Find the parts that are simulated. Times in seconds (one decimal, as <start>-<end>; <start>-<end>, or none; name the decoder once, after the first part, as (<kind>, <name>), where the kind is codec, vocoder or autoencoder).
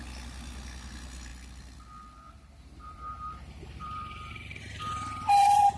1.3-4.8 (vocoder, BigVGAN v2)